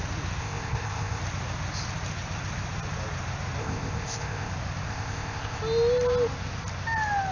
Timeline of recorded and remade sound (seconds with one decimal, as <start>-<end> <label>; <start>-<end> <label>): 0.0-0.4 recorded; 0.4-1.2 remade; 1.2-3.6 recorded; 3.6-4.5 remade; 4.5-4.9 recorded; 4.9-5.6 remade; 5.6-7.3 recorded